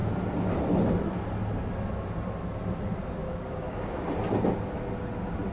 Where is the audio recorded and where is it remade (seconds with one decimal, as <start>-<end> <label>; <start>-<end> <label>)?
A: 0.0-3.2 recorded; 3.2-4.1 remade; 4.1-5.5 recorded